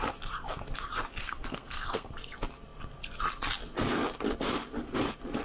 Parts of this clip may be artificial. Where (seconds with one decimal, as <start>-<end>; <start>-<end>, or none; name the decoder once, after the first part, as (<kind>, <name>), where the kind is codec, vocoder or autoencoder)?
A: 1.2-2.1 (codec, SNAC)